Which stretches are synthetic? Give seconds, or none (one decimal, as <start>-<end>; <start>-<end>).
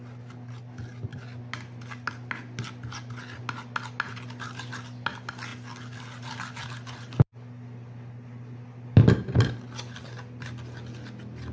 none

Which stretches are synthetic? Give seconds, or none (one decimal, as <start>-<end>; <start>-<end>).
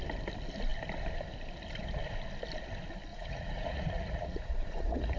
3.1-5.2